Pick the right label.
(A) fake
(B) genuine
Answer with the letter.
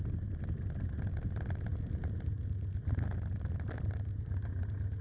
B